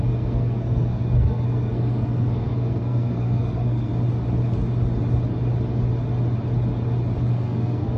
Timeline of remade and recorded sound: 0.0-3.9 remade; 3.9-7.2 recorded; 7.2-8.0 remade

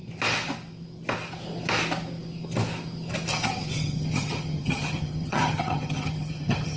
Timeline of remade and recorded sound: 0.0-3.3 recorded; 3.3-6.8 remade

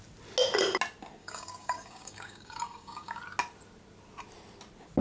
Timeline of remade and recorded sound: 0.0-1.2 recorded; 1.2-3.2 remade; 3.2-5.0 recorded